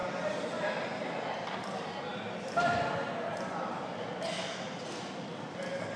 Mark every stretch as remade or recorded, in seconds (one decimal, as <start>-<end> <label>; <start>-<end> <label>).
0.0-6.0 recorded